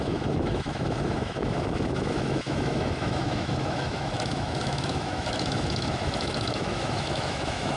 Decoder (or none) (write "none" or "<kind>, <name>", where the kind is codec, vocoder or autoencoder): autoencoder, DAC-VAE